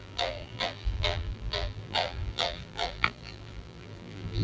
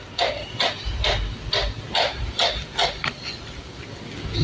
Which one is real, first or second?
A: second